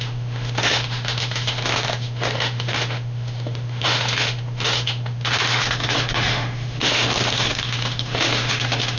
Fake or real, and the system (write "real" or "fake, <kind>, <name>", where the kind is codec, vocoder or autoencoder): fake, autoencoder, DAC-VAE